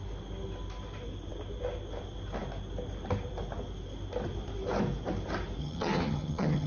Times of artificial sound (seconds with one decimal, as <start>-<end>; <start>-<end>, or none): 5.6-6.7